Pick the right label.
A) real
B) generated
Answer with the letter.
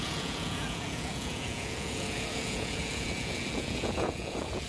B